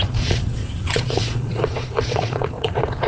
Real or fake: fake